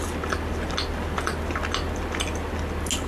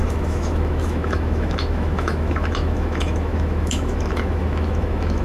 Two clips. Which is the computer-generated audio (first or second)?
second